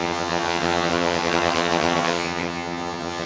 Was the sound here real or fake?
fake